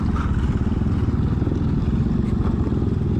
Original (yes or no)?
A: yes